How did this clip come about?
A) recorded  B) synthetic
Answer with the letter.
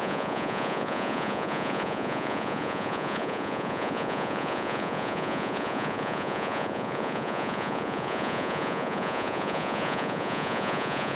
B